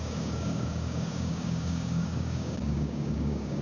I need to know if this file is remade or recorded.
remade